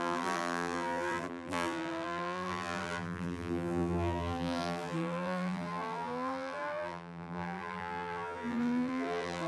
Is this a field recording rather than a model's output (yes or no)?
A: no